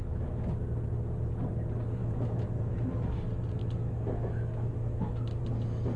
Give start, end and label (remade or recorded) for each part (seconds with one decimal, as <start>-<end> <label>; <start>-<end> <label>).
0.0-0.6 remade; 0.6-2.0 recorded; 2.0-3.2 remade; 3.2-3.6 recorded; 3.6-5.4 remade; 5.4-6.0 recorded